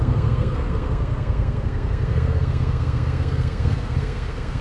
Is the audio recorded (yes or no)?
no